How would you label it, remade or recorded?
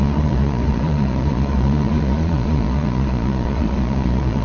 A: remade